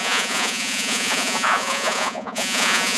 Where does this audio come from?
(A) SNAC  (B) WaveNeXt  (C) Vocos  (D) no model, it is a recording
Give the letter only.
C